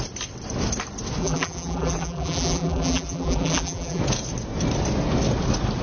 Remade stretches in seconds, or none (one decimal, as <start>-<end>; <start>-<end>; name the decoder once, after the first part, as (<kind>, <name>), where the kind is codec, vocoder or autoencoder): 1.2-4.0 (vocoder, BigVGAN v2)